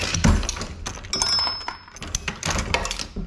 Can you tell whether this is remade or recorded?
recorded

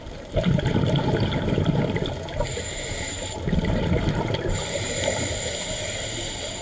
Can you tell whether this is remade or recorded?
remade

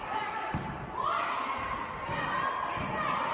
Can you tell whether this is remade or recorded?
recorded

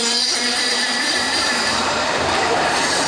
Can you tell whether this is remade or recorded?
remade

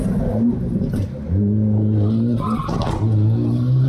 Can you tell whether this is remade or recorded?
recorded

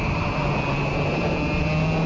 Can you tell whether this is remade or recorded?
recorded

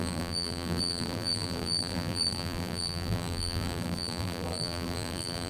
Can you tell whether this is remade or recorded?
remade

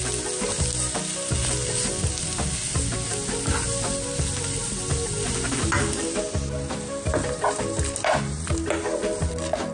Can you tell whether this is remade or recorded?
recorded